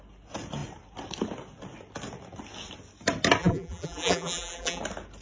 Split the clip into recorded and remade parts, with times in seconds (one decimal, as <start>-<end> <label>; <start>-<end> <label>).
0.0-3.4 recorded; 3.4-4.8 remade; 4.8-5.2 recorded